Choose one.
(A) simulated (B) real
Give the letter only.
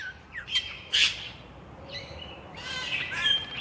A